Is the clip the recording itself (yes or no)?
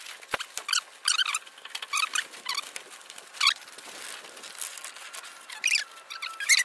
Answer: yes